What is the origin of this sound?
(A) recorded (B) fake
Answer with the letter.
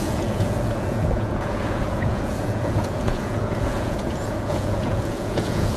B